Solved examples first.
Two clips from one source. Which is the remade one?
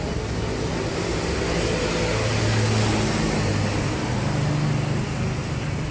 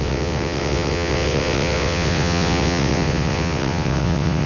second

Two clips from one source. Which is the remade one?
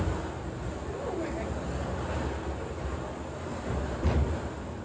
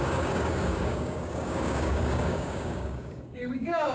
second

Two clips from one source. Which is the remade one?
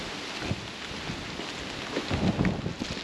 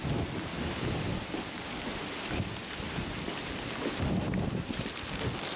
second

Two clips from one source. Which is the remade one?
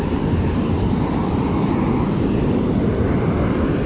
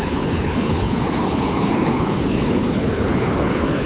second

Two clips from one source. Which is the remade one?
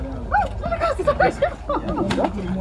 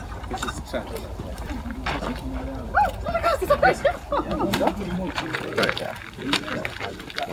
second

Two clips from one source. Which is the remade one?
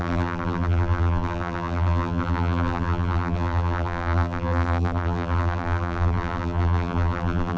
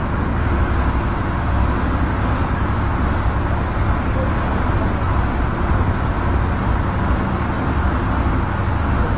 first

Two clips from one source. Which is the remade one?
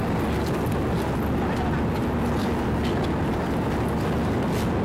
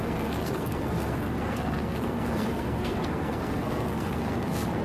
second